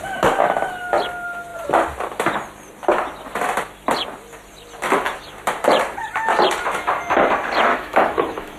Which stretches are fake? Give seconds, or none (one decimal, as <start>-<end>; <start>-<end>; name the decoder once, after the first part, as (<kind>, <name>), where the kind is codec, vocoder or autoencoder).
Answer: 7.7-8.6 (autoencoder, DAC-VAE)